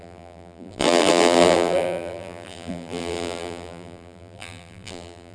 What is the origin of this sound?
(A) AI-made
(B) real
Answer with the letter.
A